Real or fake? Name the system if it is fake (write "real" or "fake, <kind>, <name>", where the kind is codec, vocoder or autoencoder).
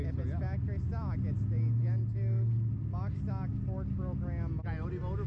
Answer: real